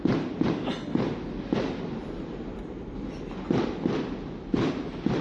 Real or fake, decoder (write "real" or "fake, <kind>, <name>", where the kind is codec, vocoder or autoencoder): real